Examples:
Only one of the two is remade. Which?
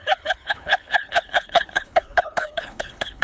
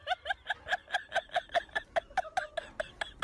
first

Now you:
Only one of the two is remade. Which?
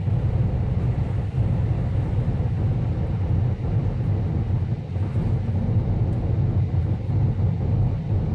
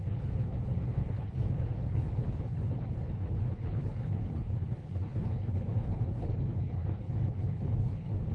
second